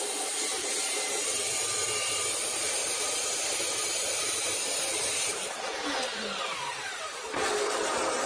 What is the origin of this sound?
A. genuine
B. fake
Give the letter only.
B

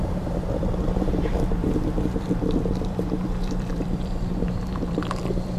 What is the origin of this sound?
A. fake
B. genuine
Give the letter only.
A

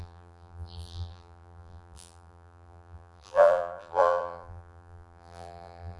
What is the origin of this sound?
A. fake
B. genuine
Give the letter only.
A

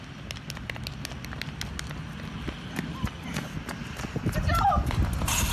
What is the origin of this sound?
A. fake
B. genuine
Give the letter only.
B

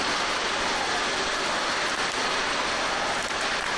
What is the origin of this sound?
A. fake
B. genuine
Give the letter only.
B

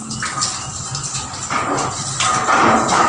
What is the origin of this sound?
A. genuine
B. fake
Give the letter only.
A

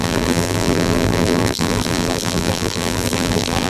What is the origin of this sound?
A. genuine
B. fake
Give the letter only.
B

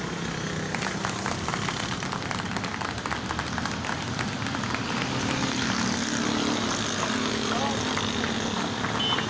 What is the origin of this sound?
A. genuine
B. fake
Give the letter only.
A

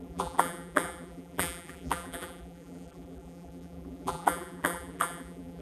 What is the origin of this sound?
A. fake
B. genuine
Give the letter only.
A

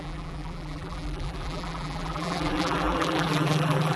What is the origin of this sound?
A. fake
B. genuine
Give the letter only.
A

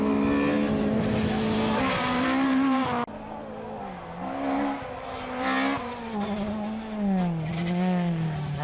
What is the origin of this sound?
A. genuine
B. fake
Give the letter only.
A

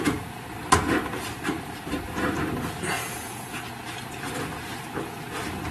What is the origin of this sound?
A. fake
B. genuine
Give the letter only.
B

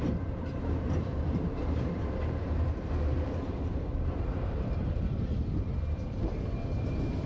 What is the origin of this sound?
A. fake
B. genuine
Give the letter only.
A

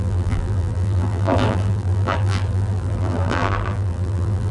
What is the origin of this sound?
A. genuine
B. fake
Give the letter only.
B